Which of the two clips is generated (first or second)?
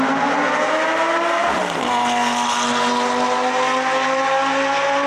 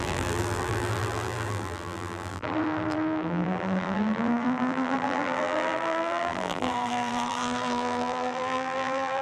second